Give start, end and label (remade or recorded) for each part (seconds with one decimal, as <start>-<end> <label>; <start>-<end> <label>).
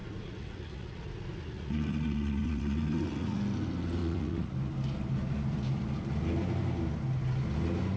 0.0-3.4 remade; 3.4-4.0 recorded; 4.0-4.5 remade; 4.5-8.0 recorded